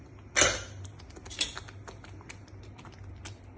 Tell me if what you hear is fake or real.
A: real